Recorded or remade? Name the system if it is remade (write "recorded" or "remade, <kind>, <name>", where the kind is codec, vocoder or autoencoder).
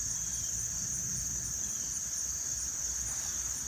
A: recorded